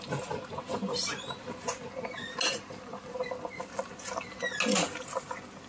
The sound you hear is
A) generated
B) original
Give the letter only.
B